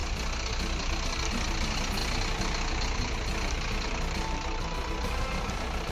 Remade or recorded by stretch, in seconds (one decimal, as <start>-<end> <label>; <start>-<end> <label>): 0.0-5.9 recorded